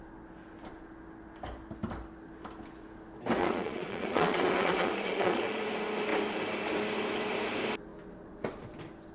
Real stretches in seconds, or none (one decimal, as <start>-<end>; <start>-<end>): 0.0-3.4; 5.6-9.1